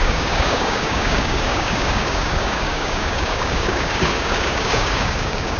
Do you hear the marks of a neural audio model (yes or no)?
yes